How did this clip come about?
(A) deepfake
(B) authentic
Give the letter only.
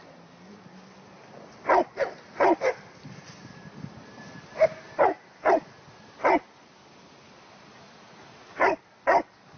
B